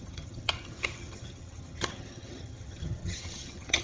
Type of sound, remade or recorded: remade